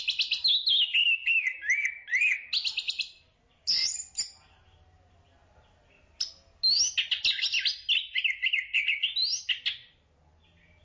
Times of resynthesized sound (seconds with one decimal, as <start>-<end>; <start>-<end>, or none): none